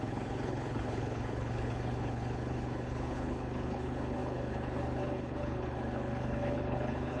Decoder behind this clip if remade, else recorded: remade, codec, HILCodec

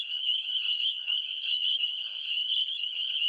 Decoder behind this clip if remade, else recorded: remade, codec, HILCodec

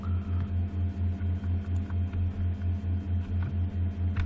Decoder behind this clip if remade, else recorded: recorded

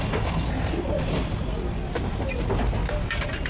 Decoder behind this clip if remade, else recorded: recorded